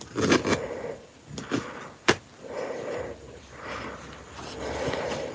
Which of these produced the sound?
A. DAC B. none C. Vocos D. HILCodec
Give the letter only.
B